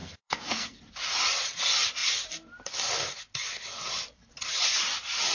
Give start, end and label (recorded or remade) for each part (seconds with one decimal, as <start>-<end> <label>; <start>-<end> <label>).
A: 0.0-0.8 remade; 0.8-5.3 recorded